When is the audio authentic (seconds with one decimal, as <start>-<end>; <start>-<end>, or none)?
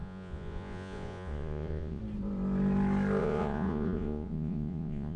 2.0-3.2